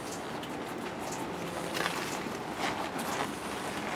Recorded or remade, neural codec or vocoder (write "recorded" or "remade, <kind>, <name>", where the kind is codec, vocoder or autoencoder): recorded